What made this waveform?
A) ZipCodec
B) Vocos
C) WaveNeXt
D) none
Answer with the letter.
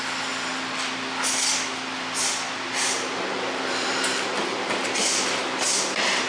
D